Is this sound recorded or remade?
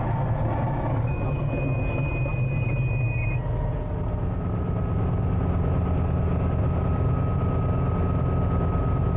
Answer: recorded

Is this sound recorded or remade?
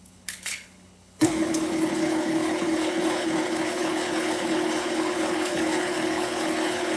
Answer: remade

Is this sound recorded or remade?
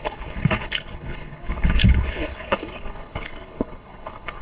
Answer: remade